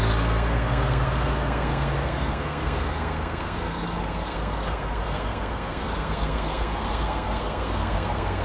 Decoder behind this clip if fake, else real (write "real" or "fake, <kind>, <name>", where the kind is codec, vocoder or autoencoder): fake, codec, SNAC